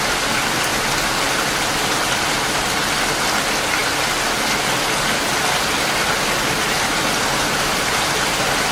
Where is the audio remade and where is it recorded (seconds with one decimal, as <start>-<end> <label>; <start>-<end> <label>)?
0.0-8.7 recorded